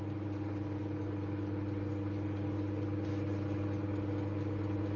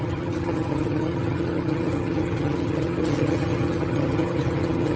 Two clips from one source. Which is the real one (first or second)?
first